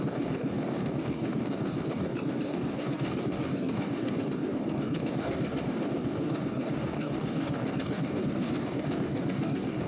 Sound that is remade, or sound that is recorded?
remade